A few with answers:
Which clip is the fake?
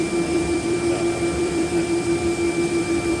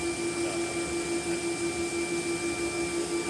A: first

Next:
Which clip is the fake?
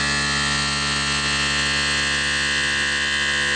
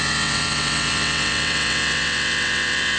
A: second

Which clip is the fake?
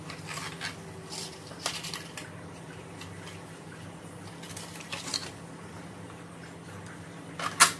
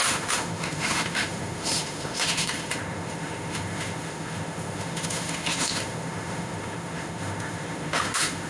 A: second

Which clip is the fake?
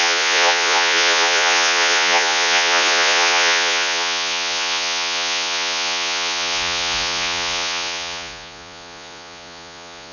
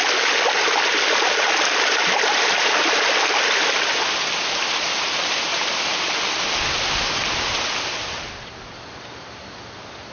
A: first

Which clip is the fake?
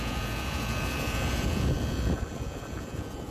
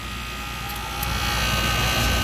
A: first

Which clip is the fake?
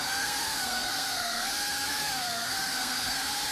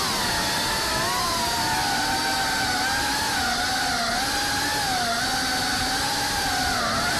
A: first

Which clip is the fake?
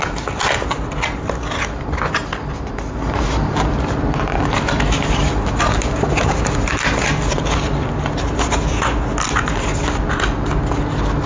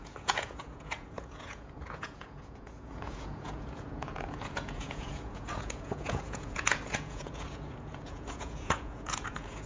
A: second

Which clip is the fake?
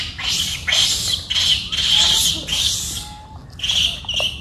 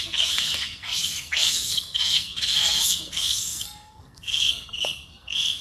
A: second